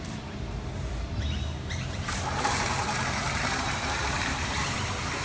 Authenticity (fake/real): fake